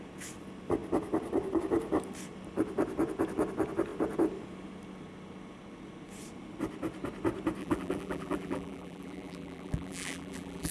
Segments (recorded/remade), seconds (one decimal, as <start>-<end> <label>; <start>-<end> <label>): 0.0-7.6 recorded; 7.6-10.7 remade

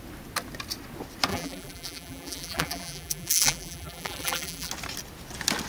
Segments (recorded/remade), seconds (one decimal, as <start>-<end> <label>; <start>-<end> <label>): 0.0-1.3 recorded; 1.3-4.7 remade; 4.7-5.7 recorded

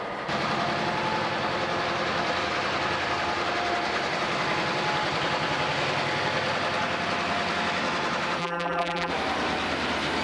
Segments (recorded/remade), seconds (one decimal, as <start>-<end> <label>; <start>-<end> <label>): 0.0-8.4 recorded; 8.4-9.1 remade; 9.1-10.2 recorded

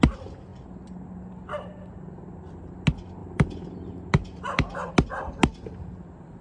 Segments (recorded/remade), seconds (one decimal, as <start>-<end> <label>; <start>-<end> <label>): 0.0-3.2 recorded; 3.2-4.9 remade; 4.9-6.4 recorded

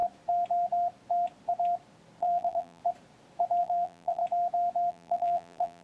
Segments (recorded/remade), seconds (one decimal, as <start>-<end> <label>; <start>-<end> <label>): 0.0-2.2 recorded; 2.2-2.8 remade; 2.8-3.6 recorded; 3.6-4.2 remade; 4.2-4.9 recorded; 4.9-5.8 remade